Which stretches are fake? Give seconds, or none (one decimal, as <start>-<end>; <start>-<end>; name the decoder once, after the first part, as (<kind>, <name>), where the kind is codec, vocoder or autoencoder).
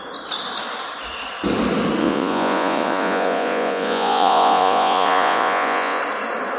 2.0-6.0 (vocoder, Vocos)